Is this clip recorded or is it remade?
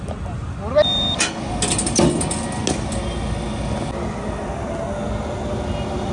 recorded